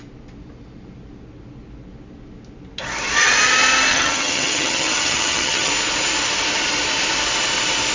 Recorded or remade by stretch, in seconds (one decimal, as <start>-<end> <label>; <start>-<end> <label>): 0.0-3.9 recorded; 3.9-5.7 remade; 5.7-7.9 recorded